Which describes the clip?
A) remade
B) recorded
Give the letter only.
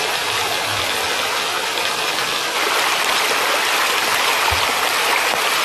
B